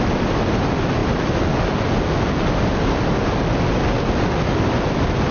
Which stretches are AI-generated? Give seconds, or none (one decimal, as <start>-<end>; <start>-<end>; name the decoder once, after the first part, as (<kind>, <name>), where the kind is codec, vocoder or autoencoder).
none